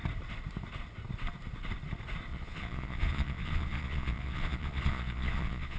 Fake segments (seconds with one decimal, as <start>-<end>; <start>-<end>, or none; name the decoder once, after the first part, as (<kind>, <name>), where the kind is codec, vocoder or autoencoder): 2.3-5.8 (vocoder, Vocos)